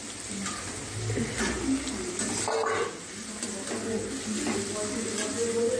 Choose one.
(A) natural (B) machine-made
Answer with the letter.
A